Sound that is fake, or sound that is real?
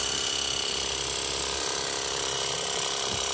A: real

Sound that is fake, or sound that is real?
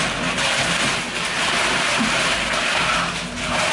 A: real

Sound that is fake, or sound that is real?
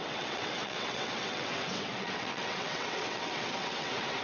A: fake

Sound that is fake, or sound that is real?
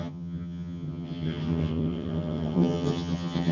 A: fake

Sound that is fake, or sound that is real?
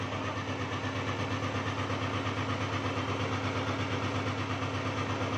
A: real